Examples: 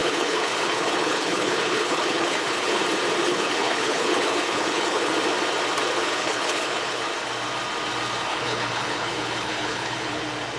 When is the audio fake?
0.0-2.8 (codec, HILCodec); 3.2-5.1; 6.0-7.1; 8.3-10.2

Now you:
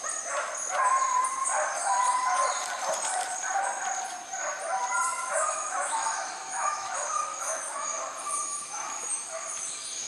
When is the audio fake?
5.1-10.1 (autoencoder, DAC-VAE)

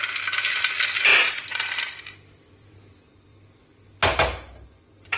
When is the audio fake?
1.1-4.2 (vocoder, BigVGAN v2)

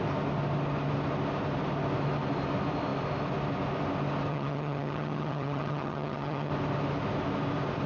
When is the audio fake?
4.3-6.5 (vocoder, HiFi-GAN)

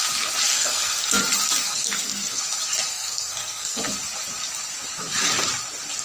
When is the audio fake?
0.5-1.2 (codec, SNAC); 1.6-2.4; 2.9-3.8

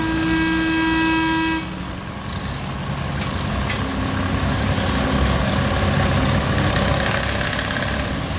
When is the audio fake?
none